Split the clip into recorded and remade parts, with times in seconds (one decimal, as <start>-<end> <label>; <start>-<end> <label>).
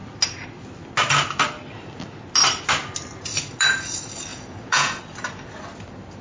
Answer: 0.0-4.3 recorded; 4.3-5.0 remade; 5.0-6.2 recorded